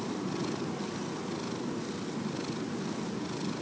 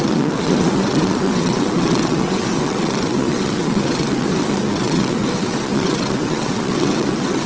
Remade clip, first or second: second